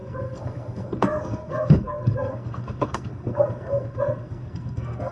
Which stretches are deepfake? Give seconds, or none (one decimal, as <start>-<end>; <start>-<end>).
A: 0.0-5.1